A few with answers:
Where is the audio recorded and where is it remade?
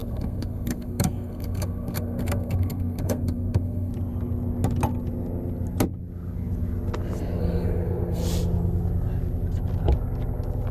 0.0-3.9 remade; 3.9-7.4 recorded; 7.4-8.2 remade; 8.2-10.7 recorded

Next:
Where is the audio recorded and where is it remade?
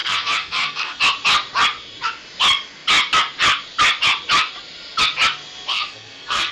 0.0-1.0 remade; 1.0-5.7 recorded; 5.7-6.5 remade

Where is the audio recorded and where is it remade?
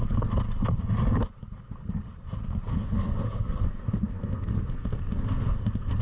0.0-2.7 recorded; 2.7-6.0 remade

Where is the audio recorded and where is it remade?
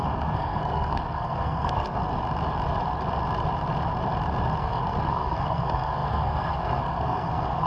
0.0-2.0 remade; 2.0-4.6 recorded; 4.6-7.7 remade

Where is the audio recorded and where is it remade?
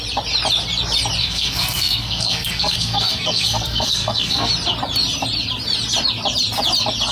0.0-1.2 recorded; 1.2-4.5 remade; 4.5-7.1 recorded